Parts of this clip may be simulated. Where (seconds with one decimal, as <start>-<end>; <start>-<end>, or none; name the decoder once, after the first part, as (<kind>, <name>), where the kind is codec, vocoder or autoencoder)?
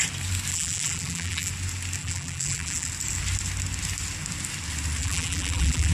0.5-1.5 (vocoder, BigVGAN v2); 2.0-2.9; 5.0-5.9